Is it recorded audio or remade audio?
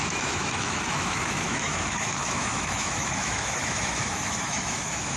remade